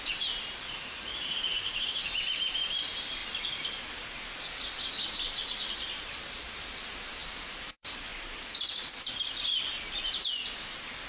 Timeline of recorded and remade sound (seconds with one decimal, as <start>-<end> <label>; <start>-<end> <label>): 0.0-3.2 remade; 3.2-5.7 recorded; 5.7-8.1 remade; 8.1-11.1 recorded